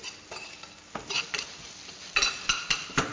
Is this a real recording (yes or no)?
yes